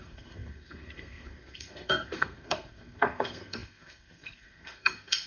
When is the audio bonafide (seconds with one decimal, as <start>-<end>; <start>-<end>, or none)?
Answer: none